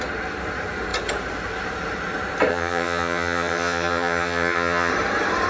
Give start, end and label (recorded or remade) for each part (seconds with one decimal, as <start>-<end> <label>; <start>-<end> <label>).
0.0-2.5 recorded; 2.5-4.9 remade; 4.9-5.5 recorded